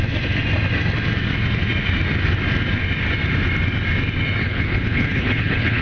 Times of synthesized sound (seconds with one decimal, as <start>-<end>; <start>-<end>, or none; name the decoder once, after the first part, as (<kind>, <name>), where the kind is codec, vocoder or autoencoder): 4.4-5.8 (codec, HILCodec)